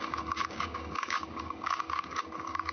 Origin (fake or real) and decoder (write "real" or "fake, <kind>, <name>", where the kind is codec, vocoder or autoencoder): fake, codec, DAC